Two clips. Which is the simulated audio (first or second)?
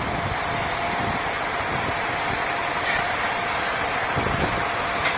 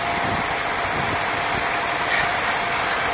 first